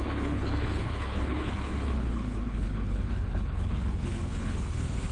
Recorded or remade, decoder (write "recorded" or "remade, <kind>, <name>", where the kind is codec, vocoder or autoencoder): remade, codec, HILCodec